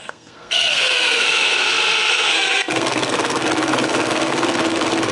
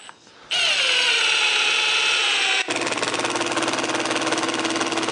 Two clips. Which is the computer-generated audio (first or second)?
first